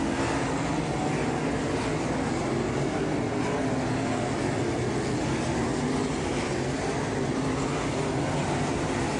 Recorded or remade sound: recorded